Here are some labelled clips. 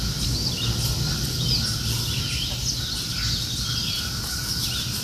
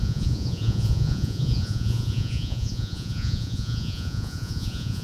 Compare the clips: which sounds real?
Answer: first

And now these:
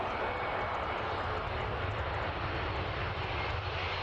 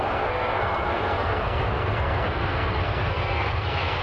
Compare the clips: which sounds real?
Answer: first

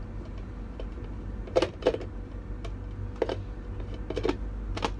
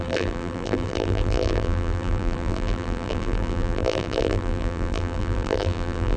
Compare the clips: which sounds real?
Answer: first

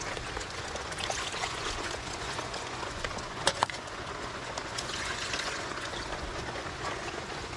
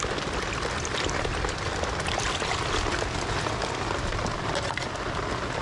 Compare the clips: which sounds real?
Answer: second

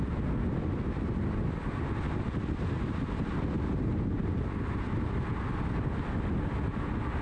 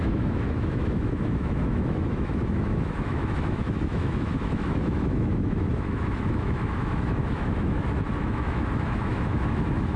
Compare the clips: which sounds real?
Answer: first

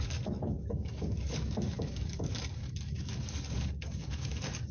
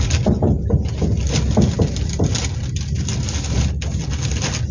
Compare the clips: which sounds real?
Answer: second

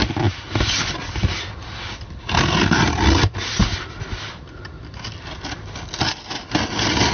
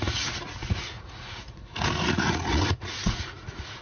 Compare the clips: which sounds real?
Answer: first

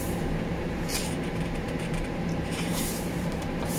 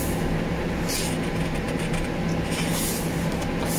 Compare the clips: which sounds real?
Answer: second